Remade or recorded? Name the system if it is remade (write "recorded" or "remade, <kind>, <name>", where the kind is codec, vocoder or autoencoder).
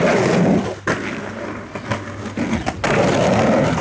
recorded